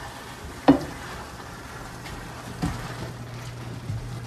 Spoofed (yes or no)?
no